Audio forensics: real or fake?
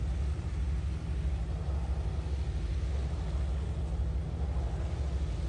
real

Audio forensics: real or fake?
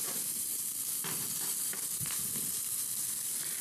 fake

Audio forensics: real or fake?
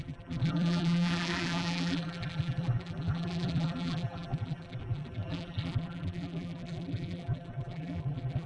fake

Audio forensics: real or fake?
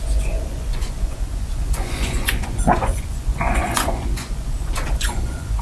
fake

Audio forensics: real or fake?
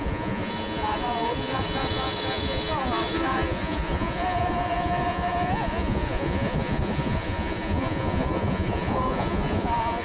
fake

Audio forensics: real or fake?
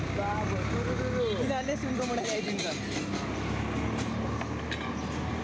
real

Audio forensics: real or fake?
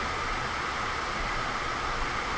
real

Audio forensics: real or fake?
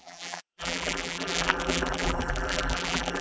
fake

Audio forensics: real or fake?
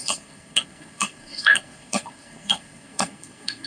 fake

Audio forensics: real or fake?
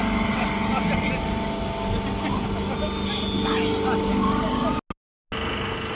real